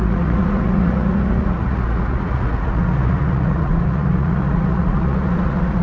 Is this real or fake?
fake